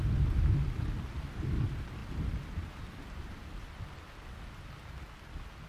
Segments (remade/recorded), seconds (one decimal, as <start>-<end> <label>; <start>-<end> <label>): 0.0-5.7 recorded